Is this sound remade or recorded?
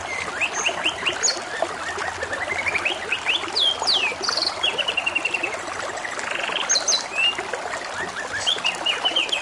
recorded